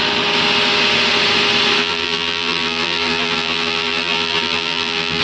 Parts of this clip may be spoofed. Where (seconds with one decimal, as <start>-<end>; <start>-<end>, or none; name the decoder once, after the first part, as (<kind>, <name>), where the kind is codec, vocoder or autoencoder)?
1.8-5.2 (vocoder, BigVGAN v2)